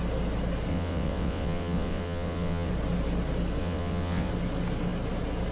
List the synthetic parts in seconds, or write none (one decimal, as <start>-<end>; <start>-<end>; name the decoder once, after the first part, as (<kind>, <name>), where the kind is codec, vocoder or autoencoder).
0.7-2.7 (vocoder, WaveNeXt); 3.6-4.3